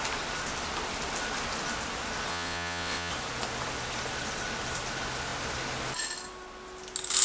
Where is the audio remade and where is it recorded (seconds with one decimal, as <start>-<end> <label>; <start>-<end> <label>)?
0.0-2.3 recorded; 2.3-3.1 remade; 3.1-7.2 recorded